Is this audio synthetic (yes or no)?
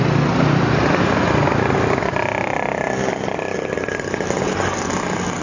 no